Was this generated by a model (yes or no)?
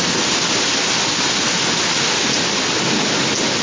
no